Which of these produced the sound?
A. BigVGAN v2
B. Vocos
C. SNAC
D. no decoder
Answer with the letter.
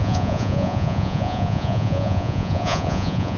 B